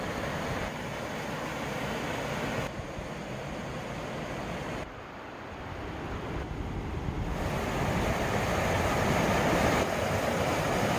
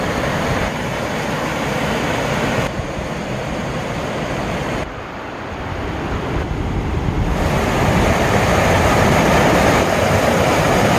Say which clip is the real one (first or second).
first